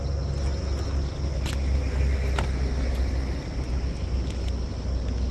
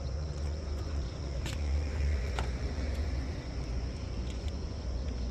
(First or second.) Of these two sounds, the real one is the first